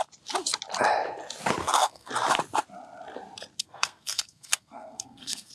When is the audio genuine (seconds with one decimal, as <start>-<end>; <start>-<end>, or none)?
0.0-1.6; 2.1-3.6